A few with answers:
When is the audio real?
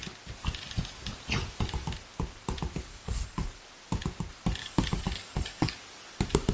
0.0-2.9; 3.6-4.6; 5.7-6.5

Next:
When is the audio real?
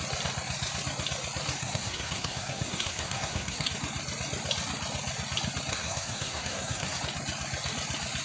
0.0-1.6; 3.7-5.7; 7.0-8.2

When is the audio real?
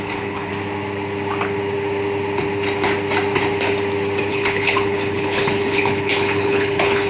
0.5-4.3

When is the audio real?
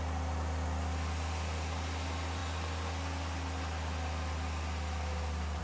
0.0-5.6